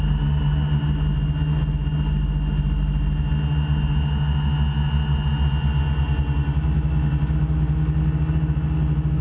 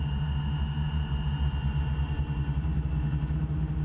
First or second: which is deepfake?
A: second